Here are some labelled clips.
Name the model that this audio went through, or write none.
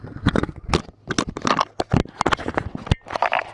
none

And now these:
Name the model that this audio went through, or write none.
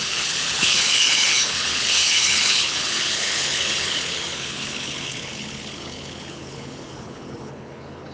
codec, HILCodec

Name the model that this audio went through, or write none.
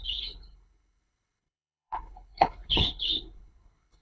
codec, HILCodec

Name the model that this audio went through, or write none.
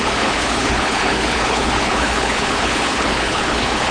codec, HILCodec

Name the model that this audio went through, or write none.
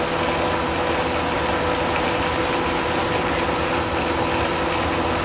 none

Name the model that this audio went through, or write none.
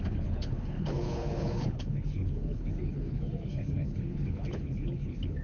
codec, HILCodec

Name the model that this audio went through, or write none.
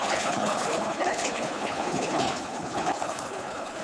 codec, HILCodec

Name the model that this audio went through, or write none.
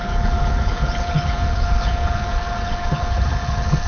codec, HILCodec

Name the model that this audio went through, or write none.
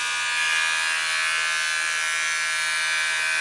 none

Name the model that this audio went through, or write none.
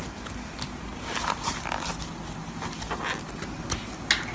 none